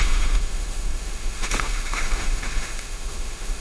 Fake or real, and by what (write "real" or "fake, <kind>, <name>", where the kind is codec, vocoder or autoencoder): fake, autoencoder, DAC-VAE